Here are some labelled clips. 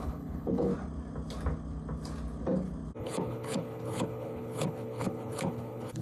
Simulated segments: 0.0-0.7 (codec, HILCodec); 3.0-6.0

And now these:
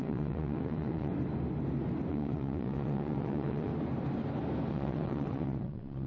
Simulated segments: 0.0-1.1 (vocoder, WaveNeXt); 2.1-3.7; 4.7-6.1

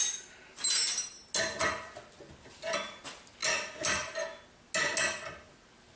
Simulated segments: none

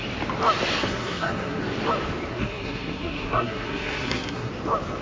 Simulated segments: 0.8-1.6 (codec, SNAC); 2.3-4.5